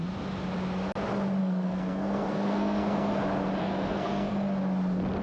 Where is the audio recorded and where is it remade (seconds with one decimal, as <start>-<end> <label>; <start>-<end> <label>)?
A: 0.0-1.4 recorded; 1.4-3.1 remade; 3.1-3.6 recorded; 3.6-4.3 remade; 4.3-5.2 recorded